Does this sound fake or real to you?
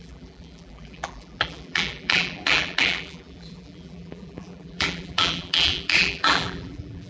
fake